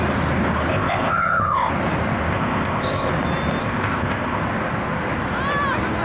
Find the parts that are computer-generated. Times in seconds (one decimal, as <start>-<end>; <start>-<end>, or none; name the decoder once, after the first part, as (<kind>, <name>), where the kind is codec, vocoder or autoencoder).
0.7-1.7 (codec, ZipCodec); 2.3-3.1; 3.6-4.4